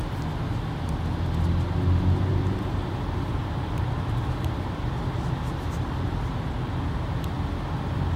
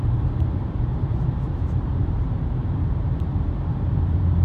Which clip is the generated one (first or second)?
second